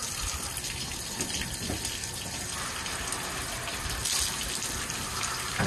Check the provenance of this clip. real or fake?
real